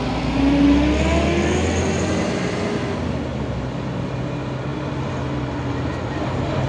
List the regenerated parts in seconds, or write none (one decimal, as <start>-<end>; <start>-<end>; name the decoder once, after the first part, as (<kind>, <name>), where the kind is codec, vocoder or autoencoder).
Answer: none